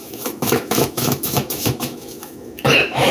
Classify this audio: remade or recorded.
remade